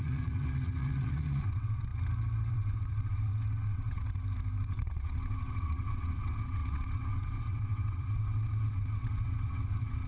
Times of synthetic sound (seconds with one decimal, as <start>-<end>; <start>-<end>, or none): 0.0-1.9; 2.5-4.0; 4.6-10.1